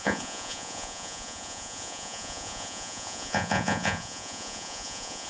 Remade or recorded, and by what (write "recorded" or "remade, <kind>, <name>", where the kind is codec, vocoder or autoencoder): remade, vocoder, Vocos